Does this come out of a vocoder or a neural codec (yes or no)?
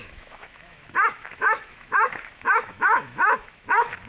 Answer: yes